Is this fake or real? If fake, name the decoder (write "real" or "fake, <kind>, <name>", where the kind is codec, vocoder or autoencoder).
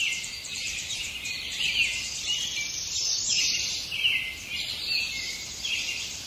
real